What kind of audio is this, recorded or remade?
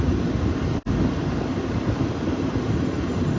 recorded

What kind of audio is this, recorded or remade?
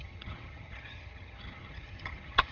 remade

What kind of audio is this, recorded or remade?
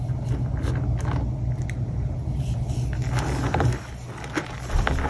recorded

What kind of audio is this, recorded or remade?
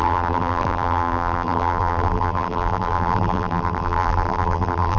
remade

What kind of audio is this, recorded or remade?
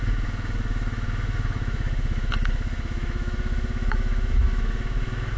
remade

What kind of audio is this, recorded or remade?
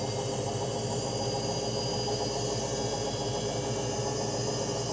recorded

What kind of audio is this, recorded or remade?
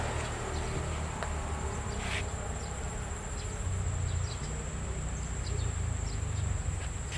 recorded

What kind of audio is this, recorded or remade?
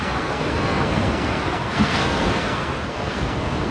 remade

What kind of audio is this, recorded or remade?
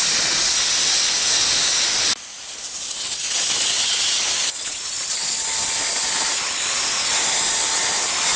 recorded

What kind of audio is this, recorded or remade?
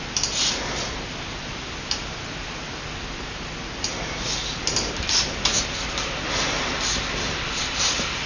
recorded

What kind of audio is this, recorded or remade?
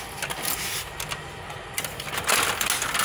recorded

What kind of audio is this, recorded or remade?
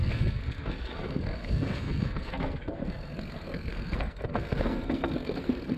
remade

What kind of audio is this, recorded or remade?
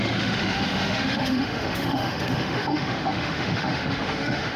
remade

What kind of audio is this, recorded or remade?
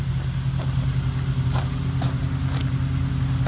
recorded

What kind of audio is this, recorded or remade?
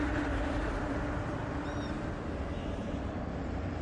remade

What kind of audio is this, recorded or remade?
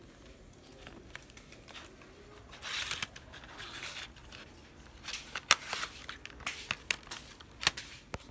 recorded